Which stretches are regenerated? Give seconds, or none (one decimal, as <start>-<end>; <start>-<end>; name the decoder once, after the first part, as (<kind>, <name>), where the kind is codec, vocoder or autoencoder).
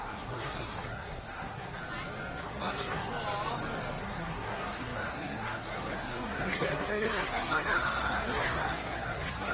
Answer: 0.0-1.8 (codec, SNAC); 2.4-3.1; 4.0-9.5